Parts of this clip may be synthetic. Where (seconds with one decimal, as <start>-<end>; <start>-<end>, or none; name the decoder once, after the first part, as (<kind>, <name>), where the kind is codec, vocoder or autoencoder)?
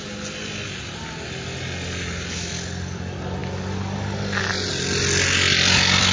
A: none